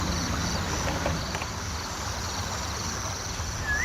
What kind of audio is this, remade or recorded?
recorded